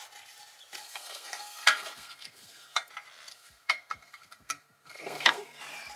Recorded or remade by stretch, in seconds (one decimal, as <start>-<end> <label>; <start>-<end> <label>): 0.0-0.8 recorded; 0.8-2.9 remade; 2.9-3.3 recorded; 3.3-5.6 remade; 5.6-6.0 recorded